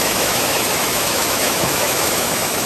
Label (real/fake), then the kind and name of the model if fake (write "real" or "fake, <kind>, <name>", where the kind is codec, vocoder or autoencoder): fake, autoencoder, DAC-VAE